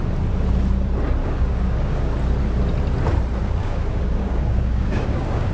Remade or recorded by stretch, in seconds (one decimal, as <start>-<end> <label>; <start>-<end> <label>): 0.0-1.2 recorded; 1.2-2.1 remade; 2.1-3.4 recorded; 3.4-5.5 remade